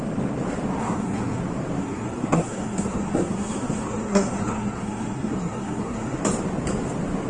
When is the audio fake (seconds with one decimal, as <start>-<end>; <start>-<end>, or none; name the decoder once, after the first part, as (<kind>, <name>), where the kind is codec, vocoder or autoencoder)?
0.8-1.4 (codec, SNAC); 1.8-6.2